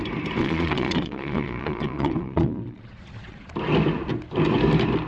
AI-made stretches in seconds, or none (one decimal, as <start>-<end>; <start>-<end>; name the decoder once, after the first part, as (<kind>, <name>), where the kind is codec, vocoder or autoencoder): 0.4-3.5 (vocoder, Vocos)

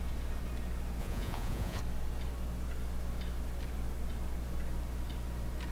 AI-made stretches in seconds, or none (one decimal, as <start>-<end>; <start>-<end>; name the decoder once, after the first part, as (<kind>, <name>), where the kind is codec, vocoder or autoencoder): 1.0-1.8 (vocoder, Vocos)

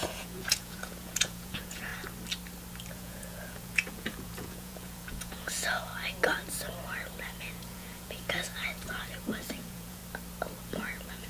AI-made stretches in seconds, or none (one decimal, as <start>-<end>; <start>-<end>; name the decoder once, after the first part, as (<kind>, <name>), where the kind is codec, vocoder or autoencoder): 0.0-1.9 (vocoder, Vocos); 2.9-5.9; 7.4-10.0; 10.6-11.3

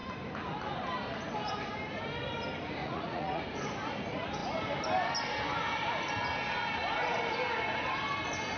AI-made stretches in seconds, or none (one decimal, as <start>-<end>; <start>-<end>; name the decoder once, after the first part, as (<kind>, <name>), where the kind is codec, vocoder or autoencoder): 2.8-3.4 (vocoder, Vocos)

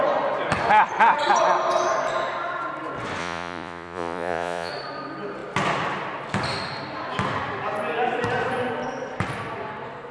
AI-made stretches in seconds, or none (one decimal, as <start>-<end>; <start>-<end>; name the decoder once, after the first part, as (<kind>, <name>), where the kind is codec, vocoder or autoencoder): 3.2-4.7 (vocoder, Vocos)

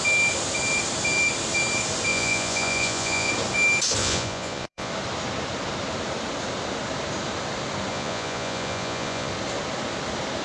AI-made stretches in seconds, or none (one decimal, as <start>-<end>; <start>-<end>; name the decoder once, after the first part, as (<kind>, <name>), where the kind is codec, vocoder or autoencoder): 2.1-3.3 (vocoder, Vocos); 4.0-4.9; 7.9-9.3

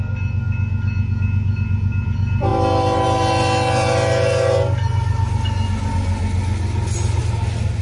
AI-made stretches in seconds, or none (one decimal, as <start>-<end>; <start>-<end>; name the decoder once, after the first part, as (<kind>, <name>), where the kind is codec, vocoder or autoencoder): none